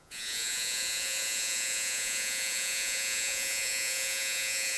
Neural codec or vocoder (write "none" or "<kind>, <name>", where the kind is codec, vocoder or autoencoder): vocoder, Vocos